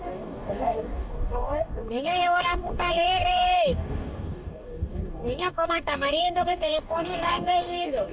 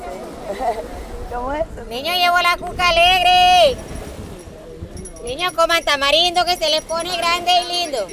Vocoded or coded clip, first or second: first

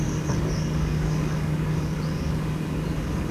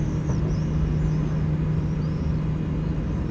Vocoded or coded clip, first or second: first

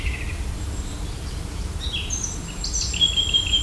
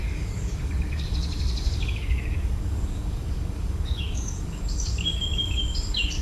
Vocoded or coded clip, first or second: second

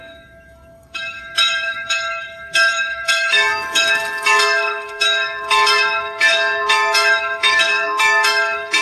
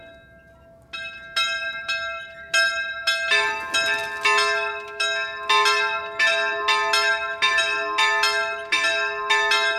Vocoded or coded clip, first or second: first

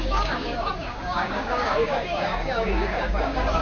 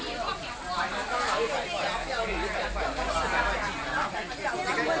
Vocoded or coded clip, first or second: first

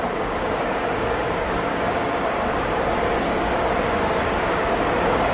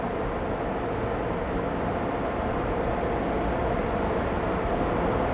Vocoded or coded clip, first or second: first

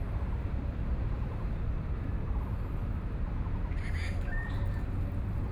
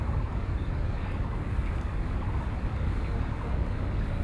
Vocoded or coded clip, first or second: second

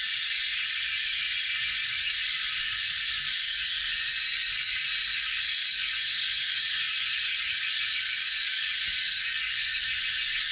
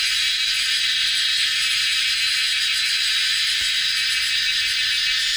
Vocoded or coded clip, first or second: first